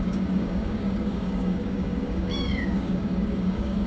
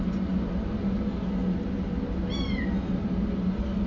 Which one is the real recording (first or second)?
second